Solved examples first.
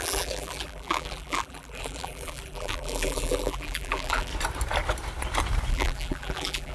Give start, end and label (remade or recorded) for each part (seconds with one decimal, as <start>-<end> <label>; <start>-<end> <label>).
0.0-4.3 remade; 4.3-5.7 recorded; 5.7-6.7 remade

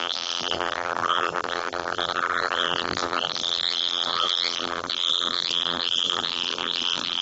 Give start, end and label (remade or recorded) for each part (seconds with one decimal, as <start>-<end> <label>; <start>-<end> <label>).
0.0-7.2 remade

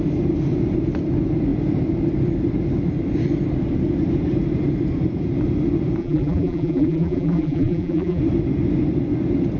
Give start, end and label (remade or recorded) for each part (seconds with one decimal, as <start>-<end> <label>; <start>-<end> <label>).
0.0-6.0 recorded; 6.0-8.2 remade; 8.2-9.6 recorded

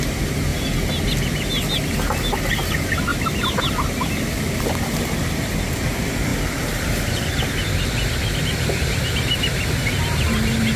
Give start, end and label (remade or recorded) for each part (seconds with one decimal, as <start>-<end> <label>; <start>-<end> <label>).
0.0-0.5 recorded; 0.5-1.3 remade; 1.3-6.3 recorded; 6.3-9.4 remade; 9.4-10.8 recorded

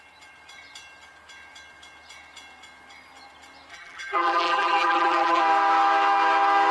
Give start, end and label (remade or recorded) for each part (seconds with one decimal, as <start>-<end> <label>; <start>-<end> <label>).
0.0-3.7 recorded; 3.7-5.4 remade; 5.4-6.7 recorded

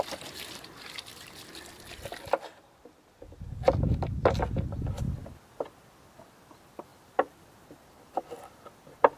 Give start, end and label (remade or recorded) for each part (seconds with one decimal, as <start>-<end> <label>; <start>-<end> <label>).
0.0-1.1 recorded; 1.1-1.8 remade; 1.8-6.9 recorded; 6.9-8.7 remade; 8.7-9.2 recorded